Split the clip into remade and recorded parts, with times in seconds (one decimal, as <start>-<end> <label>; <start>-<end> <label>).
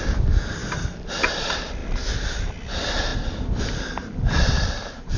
0.0-5.2 recorded